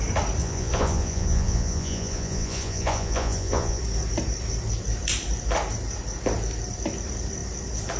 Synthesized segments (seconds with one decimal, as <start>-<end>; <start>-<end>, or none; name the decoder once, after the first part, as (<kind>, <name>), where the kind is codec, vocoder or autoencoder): 0.4-3.8 (vocoder, Vocos)